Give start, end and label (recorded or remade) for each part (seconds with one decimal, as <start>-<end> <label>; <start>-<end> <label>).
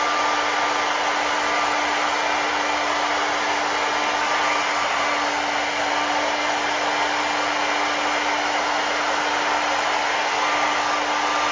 0.0-11.5 recorded